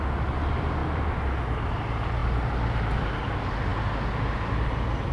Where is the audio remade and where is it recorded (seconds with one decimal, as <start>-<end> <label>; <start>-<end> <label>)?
0.0-5.1 recorded